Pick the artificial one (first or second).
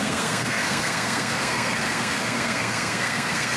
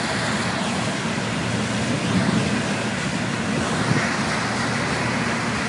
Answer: first